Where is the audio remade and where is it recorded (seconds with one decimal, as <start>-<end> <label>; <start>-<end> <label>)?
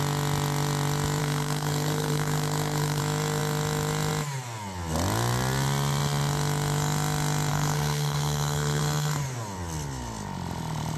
0.0-1.2 recorded; 1.2-3.0 remade; 3.0-7.5 recorded; 7.5-8.8 remade; 8.8-11.0 recorded